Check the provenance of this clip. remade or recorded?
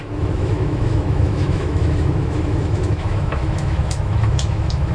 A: remade